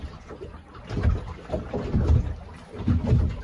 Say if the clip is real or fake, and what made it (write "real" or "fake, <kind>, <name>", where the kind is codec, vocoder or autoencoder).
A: real